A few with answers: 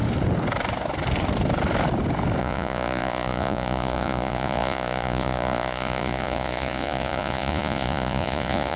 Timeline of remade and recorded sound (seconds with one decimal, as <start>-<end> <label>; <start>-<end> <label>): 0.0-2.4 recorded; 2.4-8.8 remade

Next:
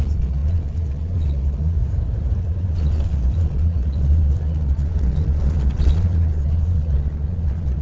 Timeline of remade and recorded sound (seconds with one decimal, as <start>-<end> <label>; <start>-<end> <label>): 0.0-1.8 remade; 1.8-2.4 recorded; 2.4-7.8 remade

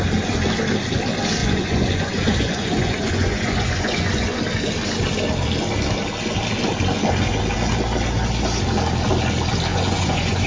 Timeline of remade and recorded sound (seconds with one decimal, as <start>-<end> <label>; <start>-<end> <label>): 0.0-1.4 recorded; 1.4-4.4 remade; 4.4-9.7 recorded; 9.7-10.5 remade

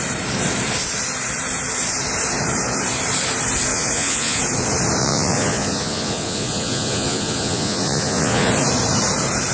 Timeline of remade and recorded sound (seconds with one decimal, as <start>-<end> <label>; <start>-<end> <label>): 0.0-3.7 recorded; 3.7-4.4 remade; 4.4-5.0 recorded; 5.0-8.5 remade; 8.5-9.5 recorded

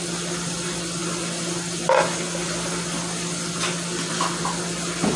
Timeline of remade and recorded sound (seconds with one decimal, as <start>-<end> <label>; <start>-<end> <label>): 0.0-5.2 recorded

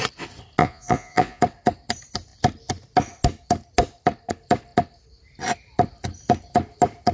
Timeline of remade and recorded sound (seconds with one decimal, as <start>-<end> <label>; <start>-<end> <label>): 0.0-0.6 recorded; 0.6-1.4 remade; 1.4-7.1 recorded

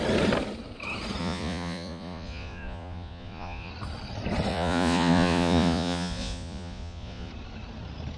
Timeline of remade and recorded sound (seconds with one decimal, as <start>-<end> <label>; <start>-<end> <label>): 0.0-1.2 recorded; 1.2-3.7 remade; 3.7-4.5 recorded; 4.5-7.3 remade; 7.3-8.2 recorded

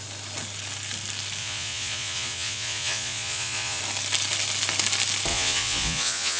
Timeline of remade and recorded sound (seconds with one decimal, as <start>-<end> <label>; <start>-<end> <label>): 0.0-1.4 recorded; 1.4-3.8 remade; 3.8-5.3 recorded; 5.3-6.4 remade